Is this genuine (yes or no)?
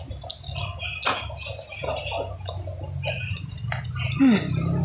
yes